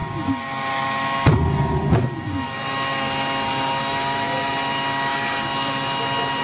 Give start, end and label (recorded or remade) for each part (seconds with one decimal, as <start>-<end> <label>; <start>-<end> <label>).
0.0-6.4 recorded